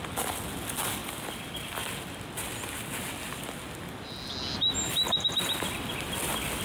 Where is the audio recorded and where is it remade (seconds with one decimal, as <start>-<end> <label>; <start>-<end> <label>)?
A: 0.0-6.6 recorded